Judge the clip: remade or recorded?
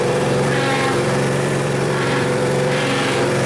remade